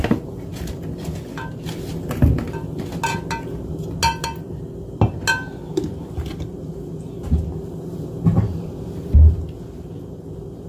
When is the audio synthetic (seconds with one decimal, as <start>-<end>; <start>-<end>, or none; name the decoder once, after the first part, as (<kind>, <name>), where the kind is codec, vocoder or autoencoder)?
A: none

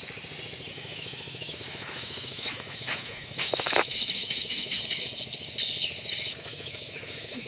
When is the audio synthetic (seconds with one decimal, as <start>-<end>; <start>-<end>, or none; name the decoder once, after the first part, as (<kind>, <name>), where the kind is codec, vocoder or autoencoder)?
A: 0.7-4.8 (autoencoder, DAC-VAE); 6.3-7.5

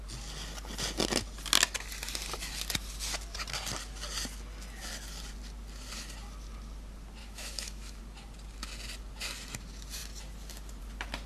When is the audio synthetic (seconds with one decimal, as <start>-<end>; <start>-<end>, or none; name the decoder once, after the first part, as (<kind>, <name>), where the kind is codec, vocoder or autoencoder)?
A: 7.2-8.0 (autoencoder, DAC-VAE)

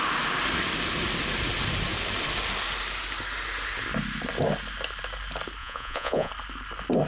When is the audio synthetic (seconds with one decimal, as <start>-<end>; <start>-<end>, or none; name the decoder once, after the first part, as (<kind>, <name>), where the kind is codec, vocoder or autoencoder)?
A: 5.6-6.3 (vocoder, Vocos)

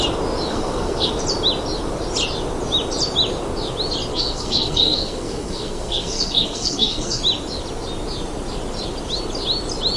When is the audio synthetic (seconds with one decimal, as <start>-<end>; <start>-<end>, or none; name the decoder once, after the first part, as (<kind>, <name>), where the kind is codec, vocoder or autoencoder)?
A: 0.5-1.1 (codec, SNAC); 4.1-7.2